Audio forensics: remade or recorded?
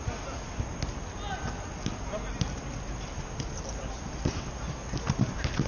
recorded